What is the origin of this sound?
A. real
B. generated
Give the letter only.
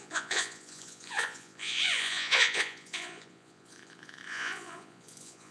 B